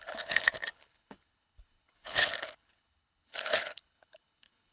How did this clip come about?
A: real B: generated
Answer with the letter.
B